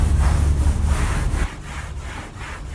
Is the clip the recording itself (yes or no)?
yes